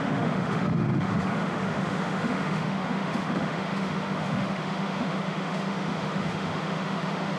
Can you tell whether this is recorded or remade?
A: remade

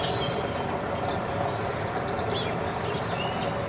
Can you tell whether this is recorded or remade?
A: recorded